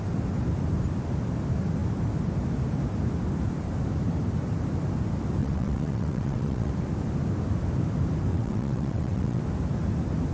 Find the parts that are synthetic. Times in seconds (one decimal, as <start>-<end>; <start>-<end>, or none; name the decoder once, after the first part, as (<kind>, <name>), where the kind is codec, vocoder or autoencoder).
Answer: 5.4-6.7 (vocoder, WaveNeXt); 8.3-9.4